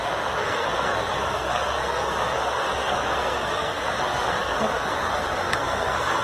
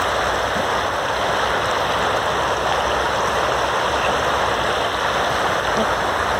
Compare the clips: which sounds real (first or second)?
second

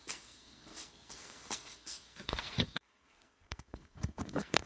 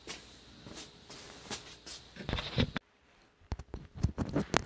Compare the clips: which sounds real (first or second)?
second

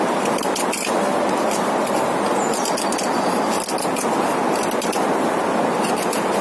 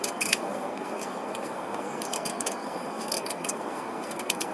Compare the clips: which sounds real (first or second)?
first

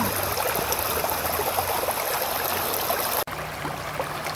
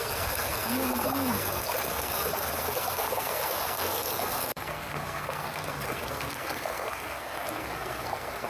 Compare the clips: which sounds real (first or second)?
first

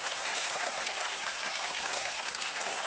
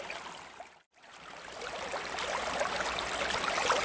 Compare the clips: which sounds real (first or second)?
second